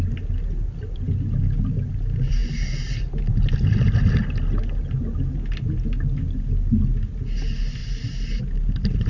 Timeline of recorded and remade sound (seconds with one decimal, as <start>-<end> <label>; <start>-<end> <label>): 0.0-9.1 recorded